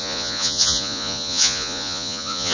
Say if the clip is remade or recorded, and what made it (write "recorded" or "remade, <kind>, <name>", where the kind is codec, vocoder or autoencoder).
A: remade, vocoder, Vocos